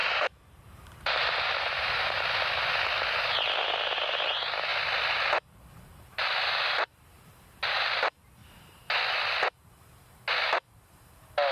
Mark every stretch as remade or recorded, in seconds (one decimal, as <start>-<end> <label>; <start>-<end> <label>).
0.0-2.2 remade; 2.2-5.9 recorded; 5.9-7.6 remade; 7.6-8.4 recorded; 8.4-9.0 remade; 9.0-11.5 recorded